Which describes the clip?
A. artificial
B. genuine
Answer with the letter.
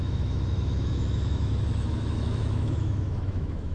A